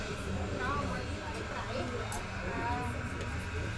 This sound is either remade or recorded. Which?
recorded